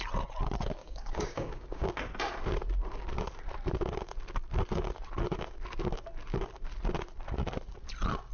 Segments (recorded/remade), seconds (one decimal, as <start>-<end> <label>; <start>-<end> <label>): 0.0-0.8 recorded; 0.8-1.9 remade; 1.9-8.3 recorded